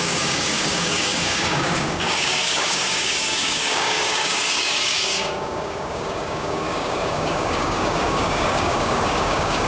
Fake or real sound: fake